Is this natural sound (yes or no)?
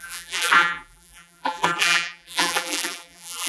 no